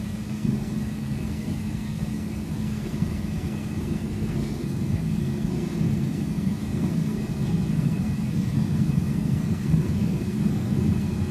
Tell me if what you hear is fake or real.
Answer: fake